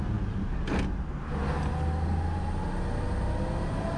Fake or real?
real